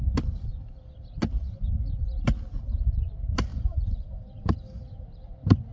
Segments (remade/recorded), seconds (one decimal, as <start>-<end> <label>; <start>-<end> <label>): 0.0-3.5 recorded; 3.5-5.3 remade; 5.3-5.7 recorded